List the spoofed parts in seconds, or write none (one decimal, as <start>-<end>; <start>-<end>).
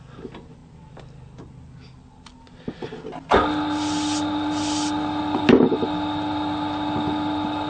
none